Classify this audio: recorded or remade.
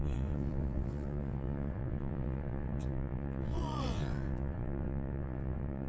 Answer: remade